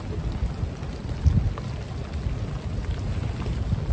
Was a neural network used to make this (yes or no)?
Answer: no